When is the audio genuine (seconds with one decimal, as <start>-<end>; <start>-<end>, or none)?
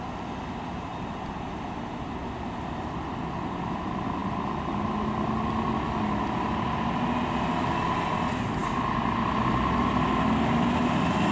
0.0-11.3